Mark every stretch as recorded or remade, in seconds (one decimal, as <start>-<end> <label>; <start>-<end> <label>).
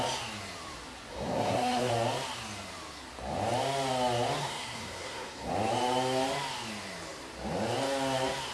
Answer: 0.0-1.1 recorded; 1.1-1.9 remade; 1.9-4.4 recorded; 4.4-5.5 remade; 5.5-8.5 recorded